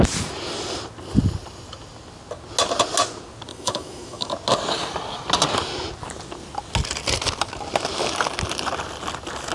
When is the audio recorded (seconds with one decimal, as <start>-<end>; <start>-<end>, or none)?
0.0-3.5; 4.3-9.5